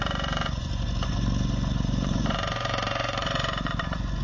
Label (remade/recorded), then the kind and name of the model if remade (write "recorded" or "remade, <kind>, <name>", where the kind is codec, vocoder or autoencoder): remade, vocoder, Vocos